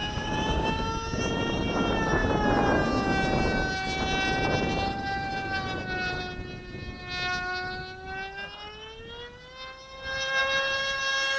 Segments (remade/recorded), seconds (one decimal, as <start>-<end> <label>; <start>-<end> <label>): 0.0-1.2 remade; 1.2-11.4 recorded